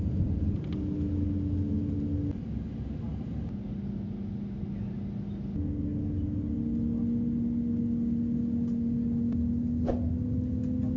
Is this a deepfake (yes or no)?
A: no